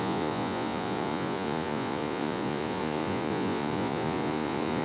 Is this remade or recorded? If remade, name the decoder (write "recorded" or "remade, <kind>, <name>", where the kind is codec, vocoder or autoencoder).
remade, vocoder, Vocos